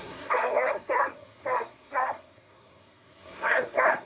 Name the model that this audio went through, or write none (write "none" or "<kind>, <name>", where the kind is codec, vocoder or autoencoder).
codec, SNAC